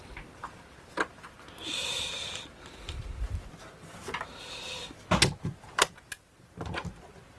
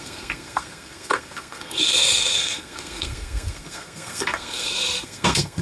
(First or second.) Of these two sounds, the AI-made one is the second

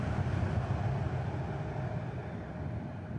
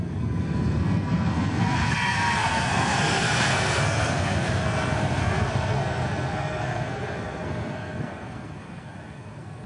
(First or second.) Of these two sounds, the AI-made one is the second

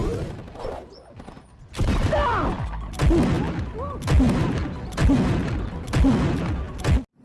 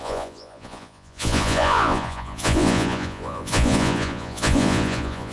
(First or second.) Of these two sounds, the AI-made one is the second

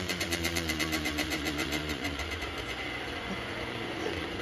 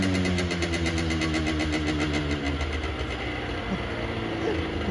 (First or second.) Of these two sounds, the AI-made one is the first